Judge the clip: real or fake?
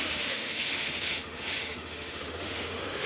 fake